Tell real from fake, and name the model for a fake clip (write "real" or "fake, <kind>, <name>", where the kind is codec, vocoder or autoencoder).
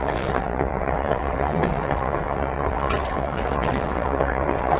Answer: fake, vocoder, WaveNeXt